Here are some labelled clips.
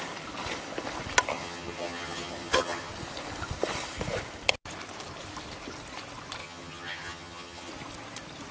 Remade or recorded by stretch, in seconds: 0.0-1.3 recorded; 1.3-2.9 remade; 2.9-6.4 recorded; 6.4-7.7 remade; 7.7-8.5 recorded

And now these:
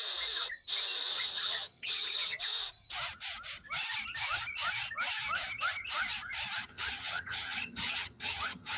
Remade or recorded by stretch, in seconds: 0.0-1.1 recorded; 1.1-2.4 remade; 2.4-6.7 recorded; 6.7-8.8 remade

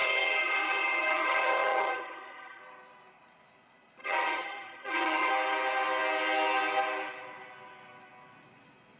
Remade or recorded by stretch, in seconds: 0.0-2.6 remade; 2.6-4.0 recorded; 4.0-5.3 remade; 5.3-9.0 recorded